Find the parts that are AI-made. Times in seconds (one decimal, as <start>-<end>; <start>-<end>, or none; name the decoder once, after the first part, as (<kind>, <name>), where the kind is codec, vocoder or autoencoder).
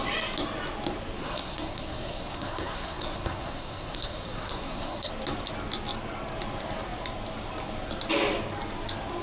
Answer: 1.2-5.1 (codec, SNAC)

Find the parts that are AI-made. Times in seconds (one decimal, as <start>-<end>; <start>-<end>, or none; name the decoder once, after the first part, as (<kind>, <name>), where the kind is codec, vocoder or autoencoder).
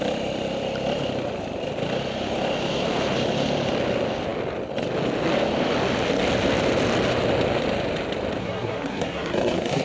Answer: 8.4-9.8 (codec, SNAC)